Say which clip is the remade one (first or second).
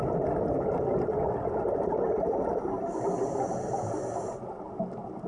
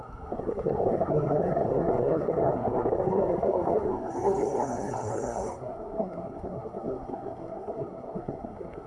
second